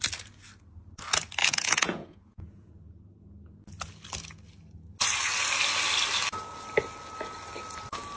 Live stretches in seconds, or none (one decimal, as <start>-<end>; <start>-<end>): 0.0-1.4; 2.7-8.2